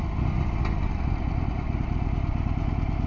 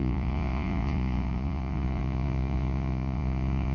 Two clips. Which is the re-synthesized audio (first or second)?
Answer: second